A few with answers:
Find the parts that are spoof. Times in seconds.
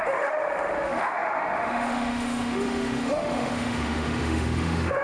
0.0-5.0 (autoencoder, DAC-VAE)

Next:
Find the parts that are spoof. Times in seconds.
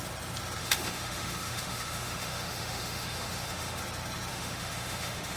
0.6-3.8 (autoencoder, DAC-VAE); 4.3-5.4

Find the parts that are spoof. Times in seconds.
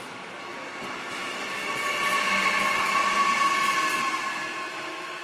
0.0-0.5 (autoencoder, DAC-VAE); 1.1-1.6; 4.7-5.2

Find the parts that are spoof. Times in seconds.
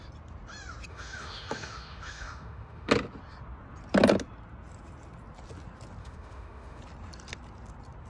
0.9-2.9 (autoencoder, DAC-VAE); 6.0-6.8